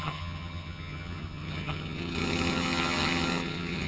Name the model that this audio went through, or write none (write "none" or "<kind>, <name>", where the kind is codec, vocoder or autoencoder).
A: vocoder, HiFi-GAN